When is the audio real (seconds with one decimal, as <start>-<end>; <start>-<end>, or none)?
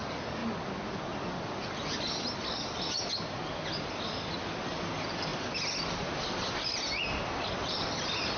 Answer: 0.0-8.4